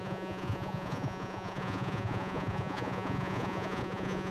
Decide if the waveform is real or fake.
fake